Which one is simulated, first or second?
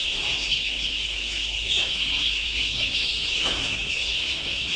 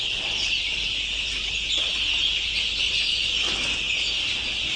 first